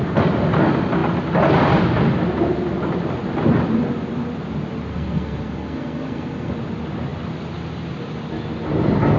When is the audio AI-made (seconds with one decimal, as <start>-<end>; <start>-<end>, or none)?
4.9-6.5